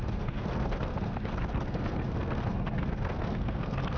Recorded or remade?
remade